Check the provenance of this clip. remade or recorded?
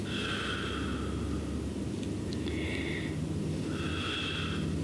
recorded